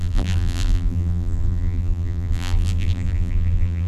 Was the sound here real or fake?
fake